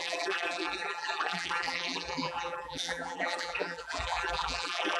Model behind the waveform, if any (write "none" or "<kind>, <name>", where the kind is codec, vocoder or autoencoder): vocoder, BigVGAN v2